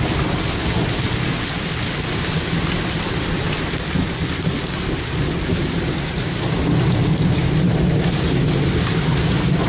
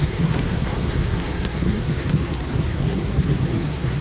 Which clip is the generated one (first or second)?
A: second